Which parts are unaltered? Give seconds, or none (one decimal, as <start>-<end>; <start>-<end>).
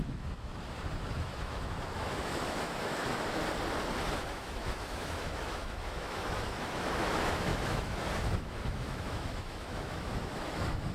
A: 0.5-1.1; 3.4-4.1